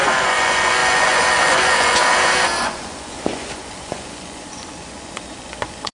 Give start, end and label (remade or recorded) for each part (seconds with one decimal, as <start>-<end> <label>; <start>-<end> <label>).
0.0-2.0 remade; 2.0-2.6 recorded; 2.6-5.9 remade